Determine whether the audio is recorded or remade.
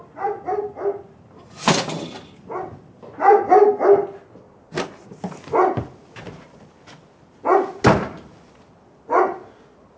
recorded